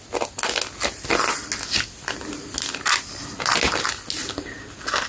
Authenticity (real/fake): real